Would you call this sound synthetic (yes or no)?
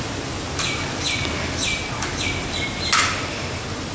no